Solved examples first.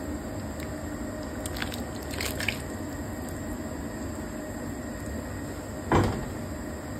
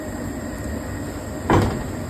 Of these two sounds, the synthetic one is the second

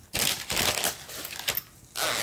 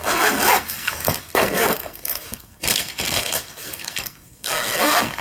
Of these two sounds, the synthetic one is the second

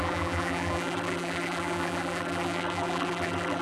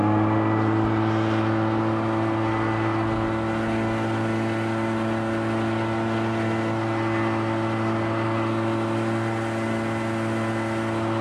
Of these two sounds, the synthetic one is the first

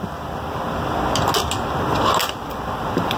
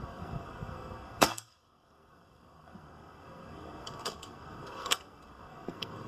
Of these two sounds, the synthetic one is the second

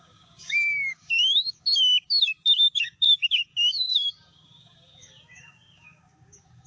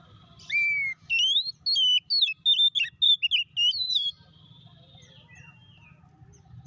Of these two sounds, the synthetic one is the first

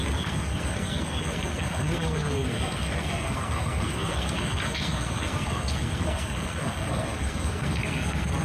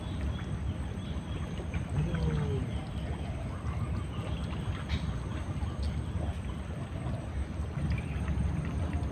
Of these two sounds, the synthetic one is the first